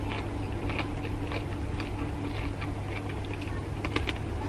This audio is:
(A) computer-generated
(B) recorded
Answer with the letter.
B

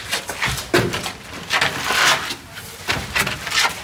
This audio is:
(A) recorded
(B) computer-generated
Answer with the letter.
A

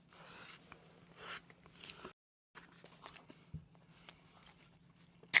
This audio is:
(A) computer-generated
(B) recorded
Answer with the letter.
B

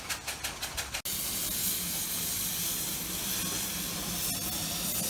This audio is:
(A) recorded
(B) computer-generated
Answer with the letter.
A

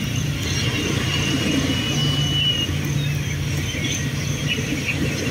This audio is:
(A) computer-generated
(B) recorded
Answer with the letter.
B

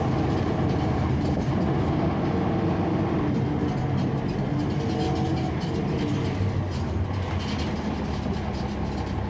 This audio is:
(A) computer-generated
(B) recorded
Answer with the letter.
B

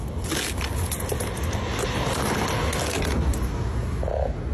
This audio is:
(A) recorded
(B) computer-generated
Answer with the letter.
A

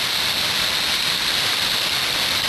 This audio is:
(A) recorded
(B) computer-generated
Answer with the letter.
A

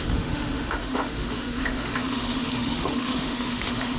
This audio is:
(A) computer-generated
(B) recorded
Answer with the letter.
A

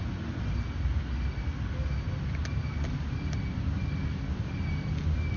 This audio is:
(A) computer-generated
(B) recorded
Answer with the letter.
B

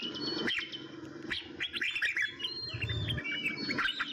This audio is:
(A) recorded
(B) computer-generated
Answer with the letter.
A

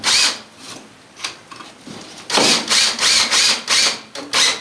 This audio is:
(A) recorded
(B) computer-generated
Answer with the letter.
A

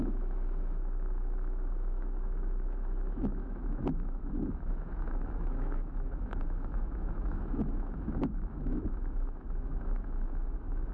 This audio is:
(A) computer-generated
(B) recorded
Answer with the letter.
A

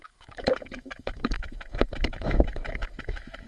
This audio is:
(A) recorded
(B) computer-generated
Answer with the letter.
B